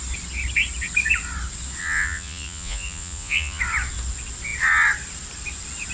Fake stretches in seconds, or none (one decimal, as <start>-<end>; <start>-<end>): 1.8-3.6